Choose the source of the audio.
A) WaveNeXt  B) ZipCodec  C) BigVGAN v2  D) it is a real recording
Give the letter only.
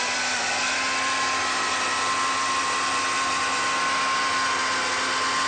D